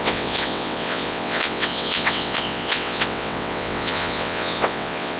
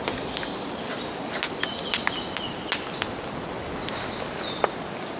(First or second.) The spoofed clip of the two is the first